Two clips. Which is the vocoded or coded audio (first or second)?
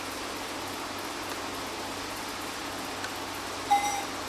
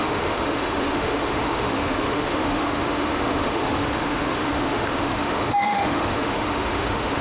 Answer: second